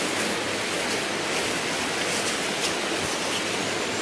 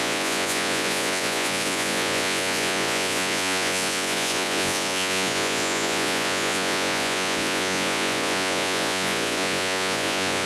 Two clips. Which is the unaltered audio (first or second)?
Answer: first